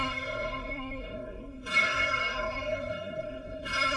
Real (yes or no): no